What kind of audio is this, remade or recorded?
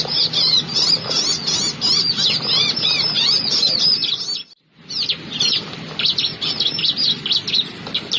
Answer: recorded